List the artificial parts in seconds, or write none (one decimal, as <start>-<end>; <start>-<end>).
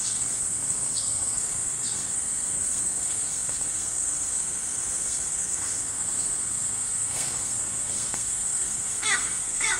0.0-9.8